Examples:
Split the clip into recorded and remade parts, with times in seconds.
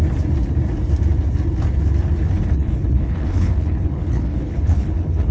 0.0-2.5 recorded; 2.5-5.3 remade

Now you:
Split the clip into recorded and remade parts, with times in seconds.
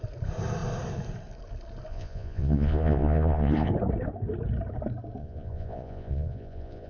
0.0-1.9 recorded; 1.9-3.7 remade; 3.7-5.2 recorded; 5.2-6.9 remade